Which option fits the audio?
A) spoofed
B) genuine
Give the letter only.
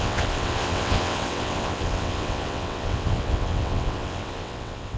A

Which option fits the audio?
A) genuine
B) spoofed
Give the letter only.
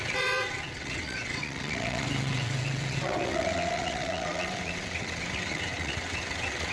B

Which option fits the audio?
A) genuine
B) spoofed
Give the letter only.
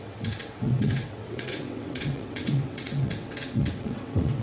B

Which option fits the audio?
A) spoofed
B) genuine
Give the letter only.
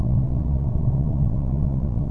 A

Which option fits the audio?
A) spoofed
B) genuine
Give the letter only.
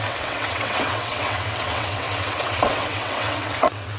A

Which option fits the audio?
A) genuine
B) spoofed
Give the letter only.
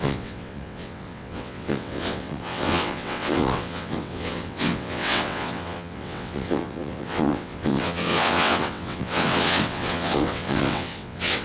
B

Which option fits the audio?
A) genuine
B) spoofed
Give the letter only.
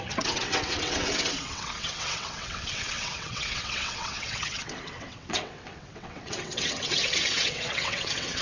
B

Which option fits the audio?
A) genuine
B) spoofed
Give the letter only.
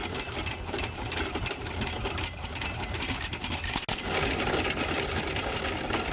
A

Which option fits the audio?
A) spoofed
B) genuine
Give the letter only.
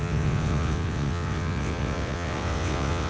A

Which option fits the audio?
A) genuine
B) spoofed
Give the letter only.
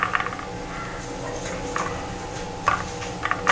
A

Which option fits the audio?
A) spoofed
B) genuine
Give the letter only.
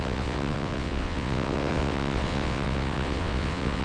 A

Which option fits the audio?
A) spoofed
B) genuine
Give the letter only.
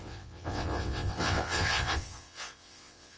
A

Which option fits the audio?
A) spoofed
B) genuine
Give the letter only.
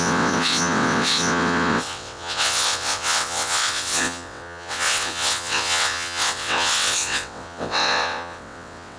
A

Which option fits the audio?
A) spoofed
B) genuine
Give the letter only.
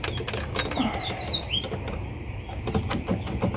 B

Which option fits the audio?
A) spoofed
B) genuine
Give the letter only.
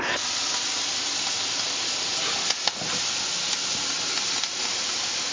B